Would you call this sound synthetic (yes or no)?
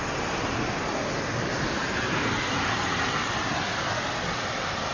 no